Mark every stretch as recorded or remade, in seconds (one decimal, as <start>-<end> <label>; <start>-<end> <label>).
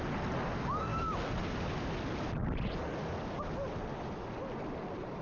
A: 0.0-5.2 recorded